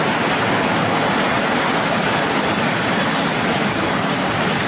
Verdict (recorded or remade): remade